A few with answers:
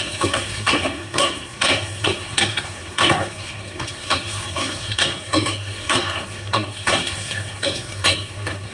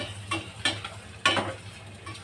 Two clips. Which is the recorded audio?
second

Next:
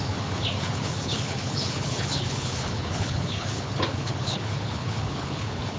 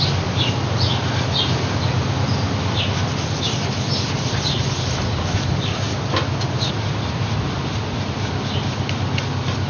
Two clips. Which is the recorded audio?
second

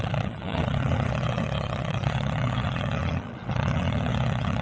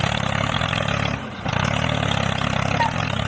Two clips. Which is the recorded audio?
second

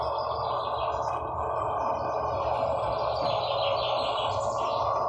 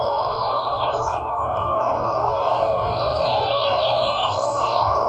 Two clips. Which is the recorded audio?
first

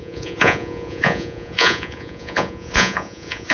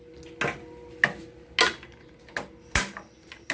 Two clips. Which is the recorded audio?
second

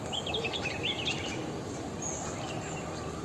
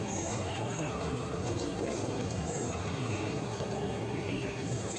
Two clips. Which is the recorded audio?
first